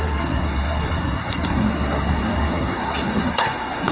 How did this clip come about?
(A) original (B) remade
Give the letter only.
B